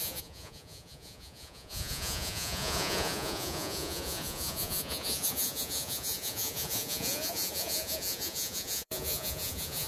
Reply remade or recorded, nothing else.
remade